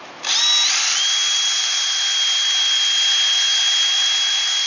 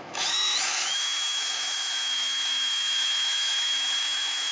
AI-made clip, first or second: second